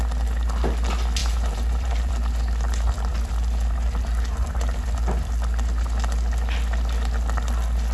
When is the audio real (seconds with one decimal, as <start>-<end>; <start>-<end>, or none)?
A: 0.0-1.2; 2.1-7.9